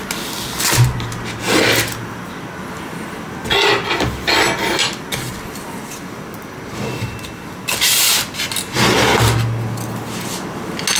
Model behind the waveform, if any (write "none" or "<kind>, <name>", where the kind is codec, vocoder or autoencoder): none